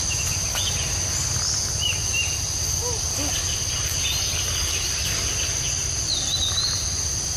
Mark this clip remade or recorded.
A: recorded